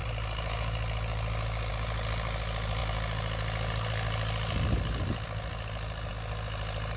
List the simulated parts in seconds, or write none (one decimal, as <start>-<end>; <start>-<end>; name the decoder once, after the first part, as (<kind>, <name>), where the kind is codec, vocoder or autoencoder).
none